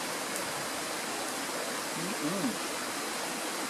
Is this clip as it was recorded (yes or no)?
yes